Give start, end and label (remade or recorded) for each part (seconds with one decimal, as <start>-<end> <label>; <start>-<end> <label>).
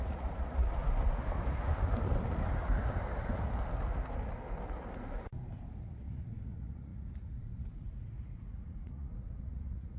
0.0-0.8 remade; 0.8-5.8 recorded; 5.8-10.0 remade